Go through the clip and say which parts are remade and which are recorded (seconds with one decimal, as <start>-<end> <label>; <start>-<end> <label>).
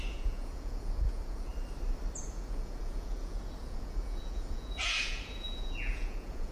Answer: 0.0-1.5 remade; 1.5-2.3 recorded; 2.3-6.5 remade